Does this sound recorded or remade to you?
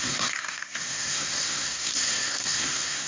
remade